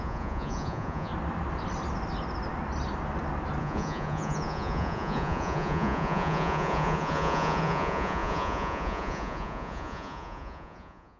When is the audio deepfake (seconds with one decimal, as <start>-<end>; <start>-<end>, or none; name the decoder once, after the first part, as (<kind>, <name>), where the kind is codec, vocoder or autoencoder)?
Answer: 0.0-1.1 (vocoder, Vocos); 3.6-11.2